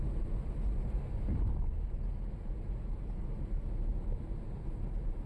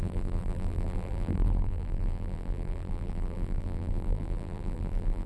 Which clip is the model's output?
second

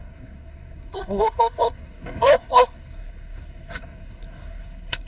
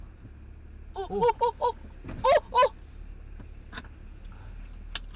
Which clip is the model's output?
first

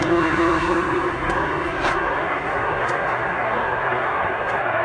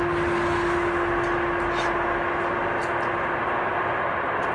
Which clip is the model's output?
first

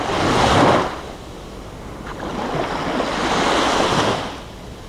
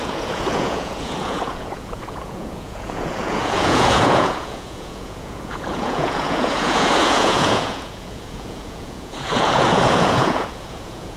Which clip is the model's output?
second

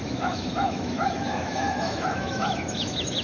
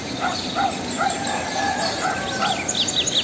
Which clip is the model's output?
first